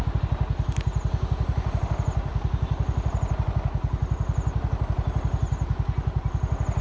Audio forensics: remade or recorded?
recorded